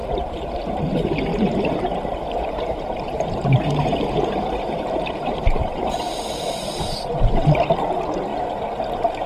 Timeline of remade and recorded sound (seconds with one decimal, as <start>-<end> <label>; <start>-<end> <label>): 0.0-0.8 remade; 0.8-1.3 recorded; 1.3-6.3 remade; 6.3-9.3 recorded